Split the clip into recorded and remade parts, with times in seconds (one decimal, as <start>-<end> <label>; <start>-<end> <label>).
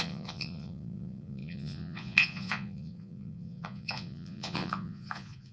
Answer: 0.0-5.5 remade